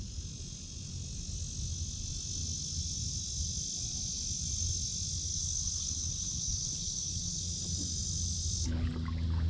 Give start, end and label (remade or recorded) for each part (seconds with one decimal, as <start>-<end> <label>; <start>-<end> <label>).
0.0-5.3 recorded; 5.3-7.4 remade; 7.4-9.5 recorded